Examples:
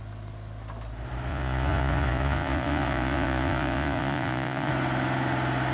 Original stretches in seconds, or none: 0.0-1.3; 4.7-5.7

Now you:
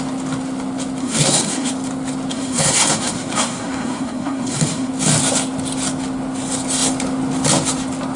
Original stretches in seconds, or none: 0.0-1.0; 1.7-2.3; 4.9-8.2

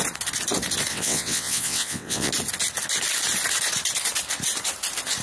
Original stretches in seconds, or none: 0.0-0.9; 2.3-5.2